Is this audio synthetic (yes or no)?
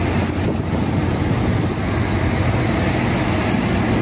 no